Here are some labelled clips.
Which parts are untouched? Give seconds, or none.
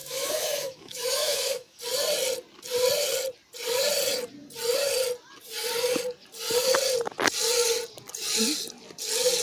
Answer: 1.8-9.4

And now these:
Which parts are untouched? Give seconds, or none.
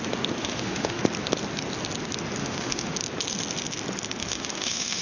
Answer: 0.0-0.4; 1.0-2.4; 3.0-4.2